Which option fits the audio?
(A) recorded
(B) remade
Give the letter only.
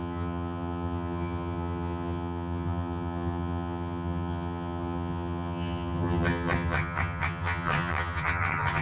B